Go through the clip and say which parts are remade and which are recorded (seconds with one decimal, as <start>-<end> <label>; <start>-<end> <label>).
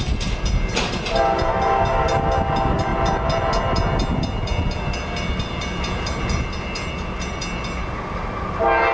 0.0-8.9 recorded